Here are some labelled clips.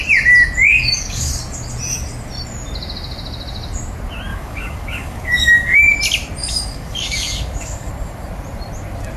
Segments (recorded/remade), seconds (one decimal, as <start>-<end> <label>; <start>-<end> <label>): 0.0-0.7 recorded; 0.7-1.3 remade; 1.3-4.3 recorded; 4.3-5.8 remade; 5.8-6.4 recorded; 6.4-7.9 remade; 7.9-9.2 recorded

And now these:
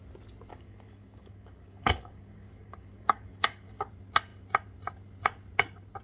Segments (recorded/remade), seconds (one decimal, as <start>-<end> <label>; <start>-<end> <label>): 0.0-0.5 recorded; 0.5-3.9 remade; 3.9-6.0 recorded

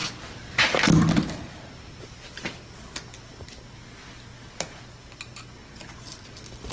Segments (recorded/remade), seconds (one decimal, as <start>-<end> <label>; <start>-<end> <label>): 0.0-6.7 recorded

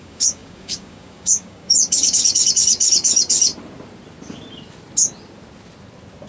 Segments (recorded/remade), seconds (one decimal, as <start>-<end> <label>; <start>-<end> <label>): 0.0-3.5 remade; 3.5-6.3 recorded

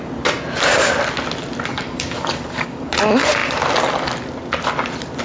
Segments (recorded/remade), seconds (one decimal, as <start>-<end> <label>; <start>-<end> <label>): 0.0-1.7 recorded; 1.7-2.9 remade; 2.9-5.2 recorded

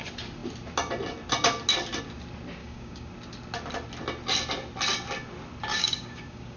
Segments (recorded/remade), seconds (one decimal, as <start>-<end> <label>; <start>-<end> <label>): 0.0-2.6 recorded; 2.6-3.1 remade; 3.1-5.7 recorded; 5.7-6.6 remade